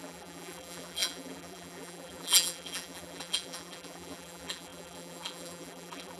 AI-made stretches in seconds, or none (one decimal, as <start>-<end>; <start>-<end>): 0.0-6.2